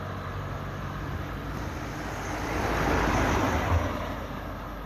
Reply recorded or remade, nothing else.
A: recorded